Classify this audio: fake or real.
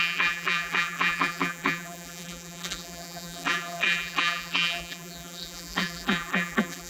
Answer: fake